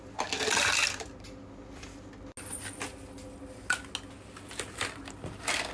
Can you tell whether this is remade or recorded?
recorded